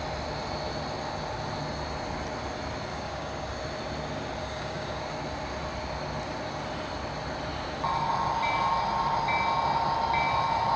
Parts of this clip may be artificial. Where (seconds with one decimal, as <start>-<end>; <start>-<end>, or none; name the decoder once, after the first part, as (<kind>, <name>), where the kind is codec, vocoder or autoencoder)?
2.9-3.6 (codec, DAC); 4.4-5.0